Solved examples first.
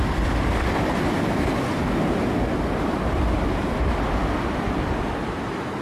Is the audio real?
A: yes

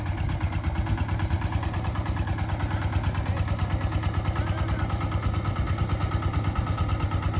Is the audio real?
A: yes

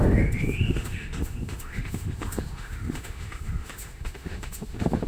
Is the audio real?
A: no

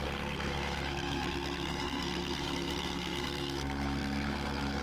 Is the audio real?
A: no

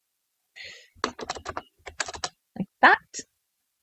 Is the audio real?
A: yes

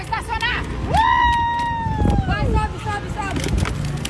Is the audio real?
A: yes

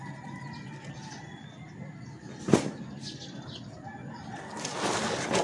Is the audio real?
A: yes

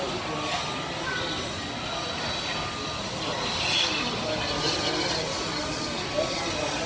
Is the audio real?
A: yes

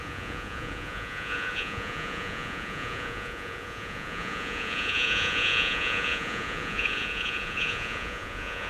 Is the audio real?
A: no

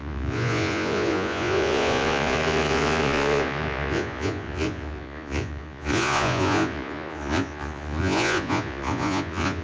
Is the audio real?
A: no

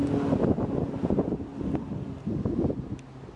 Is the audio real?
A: yes